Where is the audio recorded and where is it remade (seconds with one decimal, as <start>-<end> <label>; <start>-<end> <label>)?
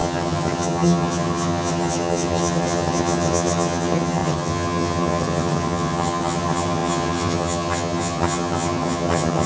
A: 0.0-9.5 remade